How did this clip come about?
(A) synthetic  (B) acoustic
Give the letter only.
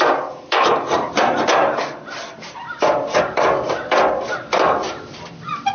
A